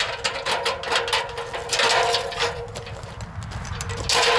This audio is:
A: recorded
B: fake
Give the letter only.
A